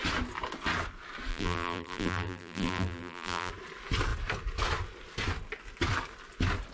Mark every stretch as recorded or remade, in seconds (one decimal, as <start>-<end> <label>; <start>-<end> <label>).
0.0-1.3 recorded; 1.3-3.5 remade; 3.5-6.7 recorded